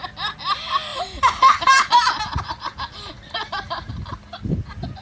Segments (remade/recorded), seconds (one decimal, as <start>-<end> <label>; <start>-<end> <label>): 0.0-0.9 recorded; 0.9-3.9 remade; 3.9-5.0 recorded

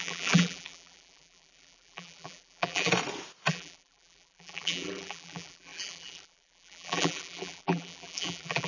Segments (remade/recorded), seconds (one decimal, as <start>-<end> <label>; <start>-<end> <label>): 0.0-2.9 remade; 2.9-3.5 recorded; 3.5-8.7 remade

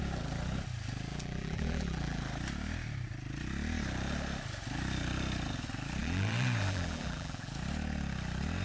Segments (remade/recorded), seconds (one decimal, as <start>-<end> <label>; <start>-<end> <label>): 0.0-1.1 recorded; 1.1-2.2 remade; 2.2-6.0 recorded; 6.0-7.5 remade; 7.5-8.6 recorded

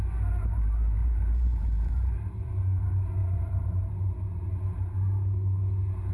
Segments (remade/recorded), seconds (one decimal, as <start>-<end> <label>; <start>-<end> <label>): 0.0-1.0 recorded; 1.0-2.5 remade; 2.5-3.2 recorded; 3.2-4.5 remade; 4.5-6.1 recorded